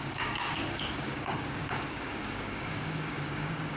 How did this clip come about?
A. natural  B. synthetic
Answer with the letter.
B